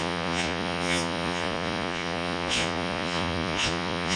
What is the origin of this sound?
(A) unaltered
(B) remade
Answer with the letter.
B